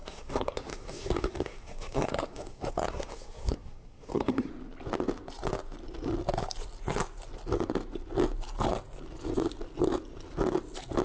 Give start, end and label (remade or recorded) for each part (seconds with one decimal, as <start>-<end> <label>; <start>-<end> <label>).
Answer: 0.0-4.5 remade; 4.5-11.0 recorded